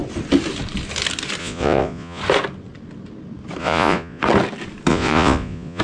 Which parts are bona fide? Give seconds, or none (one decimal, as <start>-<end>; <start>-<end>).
0.0-1.4; 2.2-3.6; 4.2-4.9